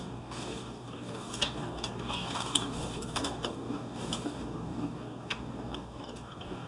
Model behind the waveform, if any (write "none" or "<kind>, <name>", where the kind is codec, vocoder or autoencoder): codec, DAC